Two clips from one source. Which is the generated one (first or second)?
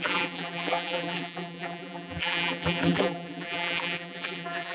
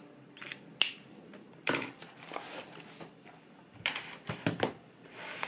first